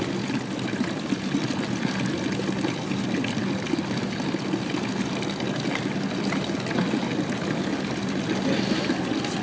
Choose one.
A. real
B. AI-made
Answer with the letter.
A